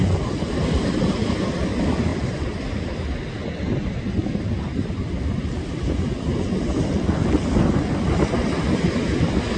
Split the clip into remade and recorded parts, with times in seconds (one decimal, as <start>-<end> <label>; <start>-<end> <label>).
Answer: 0.0-9.6 recorded